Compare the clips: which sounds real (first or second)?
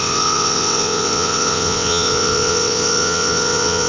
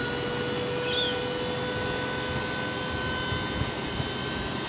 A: second